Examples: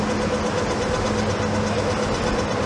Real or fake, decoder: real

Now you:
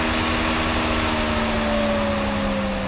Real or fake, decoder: real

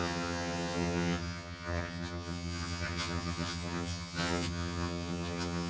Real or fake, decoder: fake, vocoder, HiFi-GAN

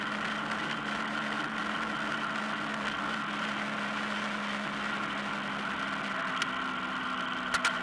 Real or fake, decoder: real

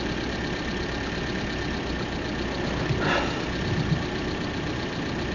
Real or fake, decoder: real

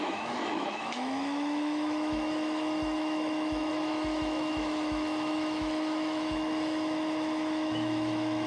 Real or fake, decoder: fake, autoencoder, DAC-VAE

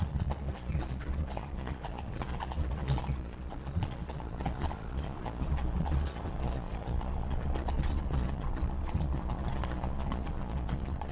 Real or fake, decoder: fake, vocoder, Vocos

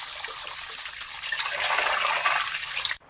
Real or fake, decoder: fake, vocoder, BigVGAN v2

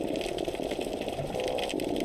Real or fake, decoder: real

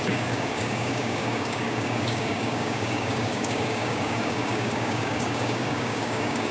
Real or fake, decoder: fake, codec, DAC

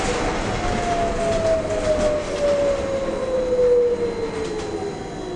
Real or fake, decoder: real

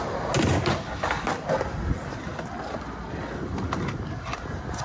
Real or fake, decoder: real